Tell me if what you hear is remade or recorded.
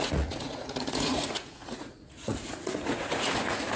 remade